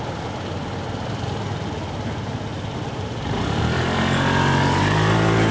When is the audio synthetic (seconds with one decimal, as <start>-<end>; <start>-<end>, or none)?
2.5-3.6